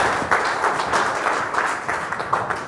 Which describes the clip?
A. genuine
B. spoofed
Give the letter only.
A